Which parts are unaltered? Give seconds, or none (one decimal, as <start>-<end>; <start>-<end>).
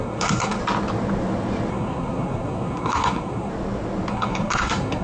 0.6-1.7; 3.5-4.1